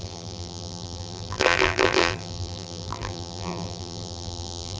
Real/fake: fake